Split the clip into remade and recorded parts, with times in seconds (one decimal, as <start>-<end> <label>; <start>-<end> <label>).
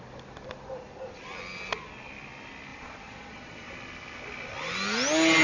0.0-2.7 recorded; 2.7-3.7 remade; 3.7-5.4 recorded